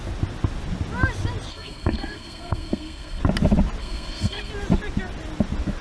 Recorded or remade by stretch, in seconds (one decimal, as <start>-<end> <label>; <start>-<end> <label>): 0.0-1.5 recorded; 1.5-3.2 remade; 3.2-3.8 recorded; 3.8-4.5 remade; 4.5-5.8 recorded

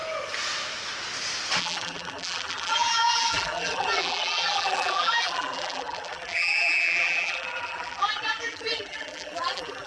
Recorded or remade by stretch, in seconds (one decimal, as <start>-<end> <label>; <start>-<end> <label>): 0.0-1.6 recorded; 1.6-9.9 remade

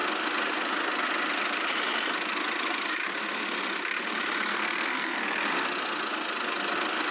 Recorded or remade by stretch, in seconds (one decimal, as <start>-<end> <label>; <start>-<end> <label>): 0.0-4.5 recorded; 4.5-5.2 remade; 5.2-7.1 recorded